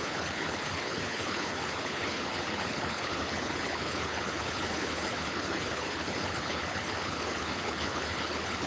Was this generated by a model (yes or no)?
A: yes